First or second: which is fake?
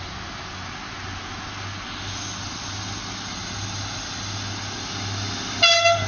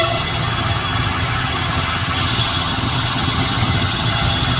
second